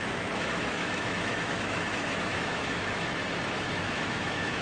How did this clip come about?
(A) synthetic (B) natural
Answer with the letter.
A